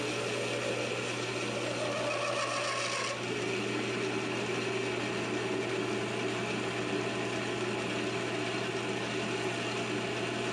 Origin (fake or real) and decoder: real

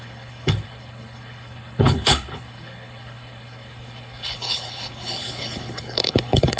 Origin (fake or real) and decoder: fake, codec, HILCodec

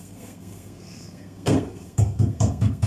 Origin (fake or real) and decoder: fake, codec, SNAC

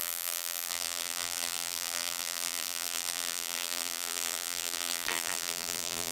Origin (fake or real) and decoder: fake, vocoder, BigVGAN v2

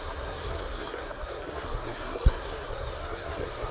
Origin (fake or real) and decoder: fake, codec, SNAC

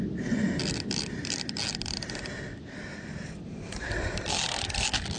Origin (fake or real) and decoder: real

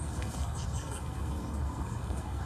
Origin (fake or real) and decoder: fake, codec, SNAC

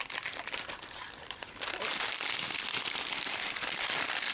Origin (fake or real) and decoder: fake, vocoder, BigVGAN v2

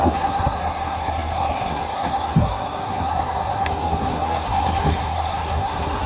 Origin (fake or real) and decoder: fake, codec, SNAC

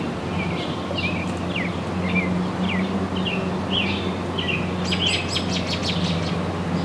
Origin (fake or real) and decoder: real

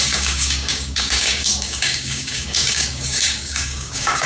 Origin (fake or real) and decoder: fake, codec, DAC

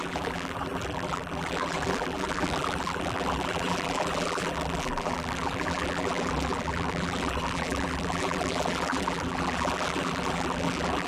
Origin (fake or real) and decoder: fake, vocoder, BigVGAN v2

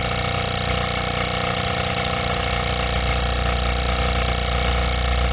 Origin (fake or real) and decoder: real